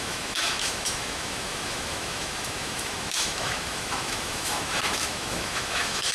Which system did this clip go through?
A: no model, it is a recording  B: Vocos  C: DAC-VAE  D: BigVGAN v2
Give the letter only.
C